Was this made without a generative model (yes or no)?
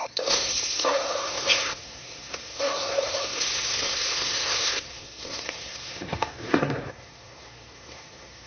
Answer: no